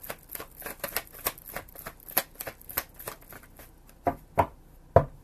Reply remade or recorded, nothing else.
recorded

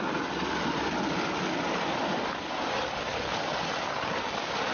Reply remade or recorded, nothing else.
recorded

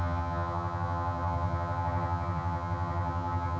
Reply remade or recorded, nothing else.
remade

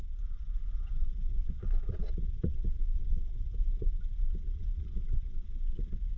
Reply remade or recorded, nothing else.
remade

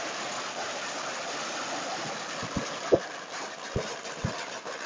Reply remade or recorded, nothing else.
recorded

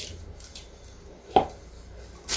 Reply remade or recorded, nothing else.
recorded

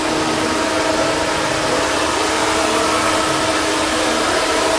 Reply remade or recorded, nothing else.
recorded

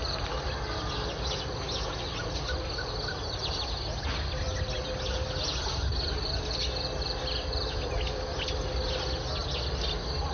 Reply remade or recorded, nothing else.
recorded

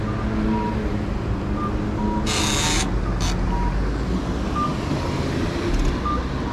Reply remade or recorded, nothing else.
recorded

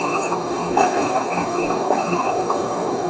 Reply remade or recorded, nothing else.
remade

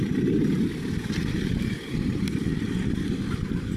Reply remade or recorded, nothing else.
remade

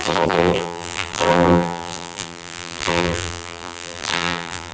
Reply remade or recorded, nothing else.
remade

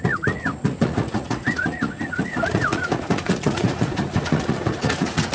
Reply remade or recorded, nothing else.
remade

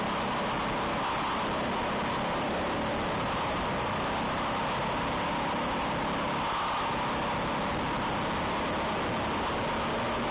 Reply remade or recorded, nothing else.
recorded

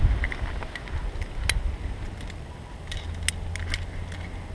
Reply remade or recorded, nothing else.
recorded